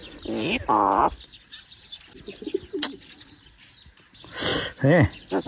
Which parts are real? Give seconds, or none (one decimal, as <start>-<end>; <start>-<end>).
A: 0.0-5.5